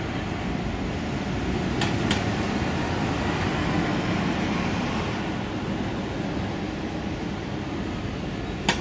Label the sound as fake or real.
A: real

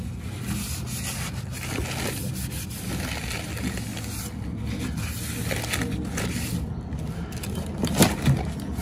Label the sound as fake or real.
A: real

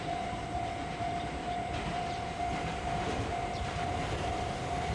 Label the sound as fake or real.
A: fake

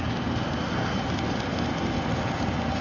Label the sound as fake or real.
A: real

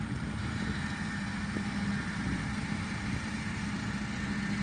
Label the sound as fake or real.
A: real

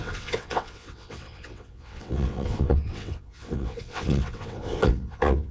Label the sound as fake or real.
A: fake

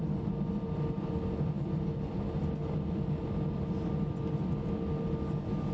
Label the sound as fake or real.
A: real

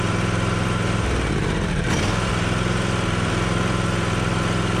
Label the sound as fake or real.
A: fake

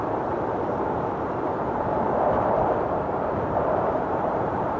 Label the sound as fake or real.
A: fake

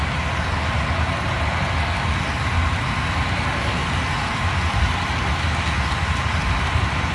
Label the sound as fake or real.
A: real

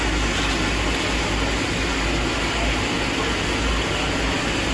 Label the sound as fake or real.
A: real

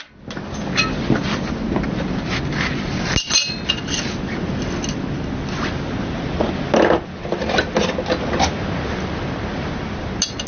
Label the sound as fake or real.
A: real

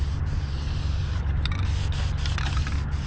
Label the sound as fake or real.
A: real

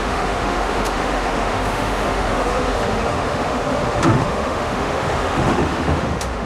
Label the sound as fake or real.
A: fake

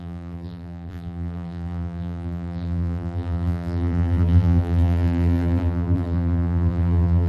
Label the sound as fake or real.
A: fake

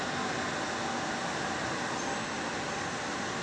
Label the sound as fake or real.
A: real